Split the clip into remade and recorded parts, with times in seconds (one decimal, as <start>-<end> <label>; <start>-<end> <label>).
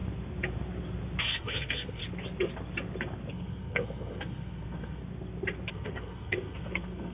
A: 0.0-1.2 recorded; 1.2-2.0 remade; 2.0-3.3 recorded; 3.3-5.0 remade; 5.0-5.7 recorded; 5.7-7.1 remade